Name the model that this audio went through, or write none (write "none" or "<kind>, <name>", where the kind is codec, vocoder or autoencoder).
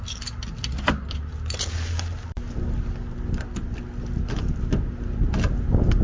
none